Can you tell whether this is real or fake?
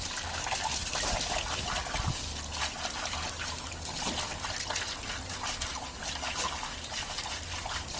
real